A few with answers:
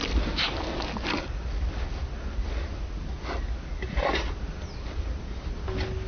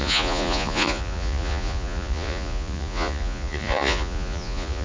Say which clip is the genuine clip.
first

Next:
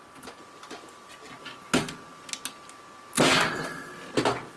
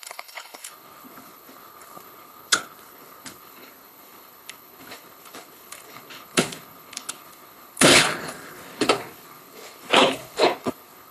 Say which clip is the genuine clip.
first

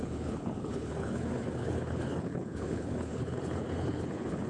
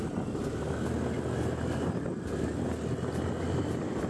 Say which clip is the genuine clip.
second